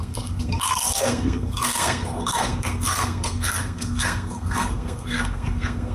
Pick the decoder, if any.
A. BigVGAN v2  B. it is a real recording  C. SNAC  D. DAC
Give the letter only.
C